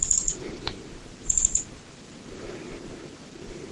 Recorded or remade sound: recorded